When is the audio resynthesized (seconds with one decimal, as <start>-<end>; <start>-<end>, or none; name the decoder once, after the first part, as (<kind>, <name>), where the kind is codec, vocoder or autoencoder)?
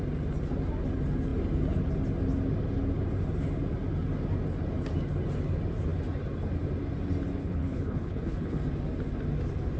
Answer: 7.4-8.6 (codec, HILCodec)